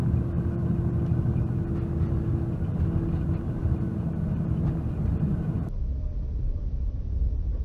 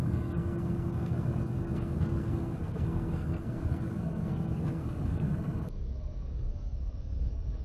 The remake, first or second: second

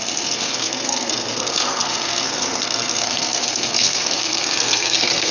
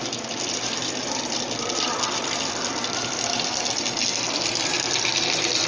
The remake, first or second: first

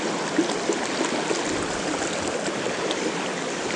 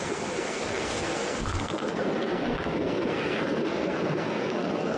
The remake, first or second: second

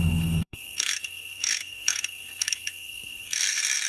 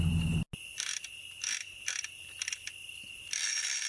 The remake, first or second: first